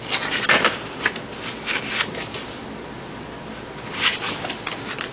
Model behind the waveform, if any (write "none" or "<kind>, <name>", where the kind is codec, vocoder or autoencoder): none